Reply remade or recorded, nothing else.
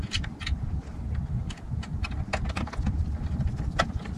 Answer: recorded